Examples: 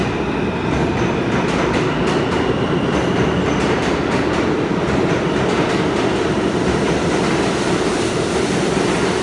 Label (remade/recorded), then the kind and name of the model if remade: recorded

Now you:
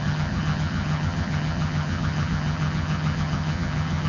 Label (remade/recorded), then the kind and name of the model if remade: remade, vocoder, HiFi-GAN